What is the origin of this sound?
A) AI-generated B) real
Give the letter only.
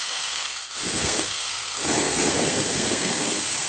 A